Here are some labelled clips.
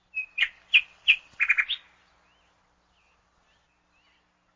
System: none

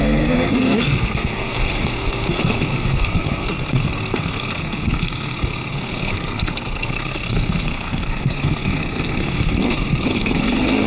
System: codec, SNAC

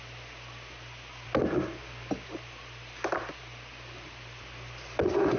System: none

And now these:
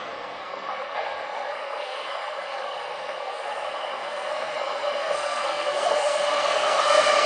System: codec, SNAC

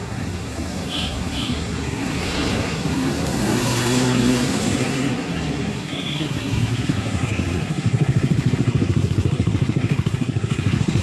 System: codec, SNAC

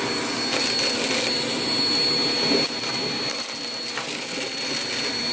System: none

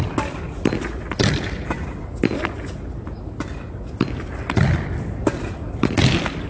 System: none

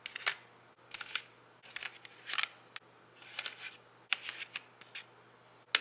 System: none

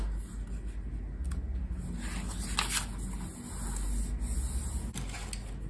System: none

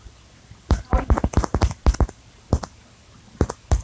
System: none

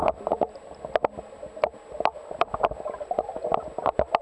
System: none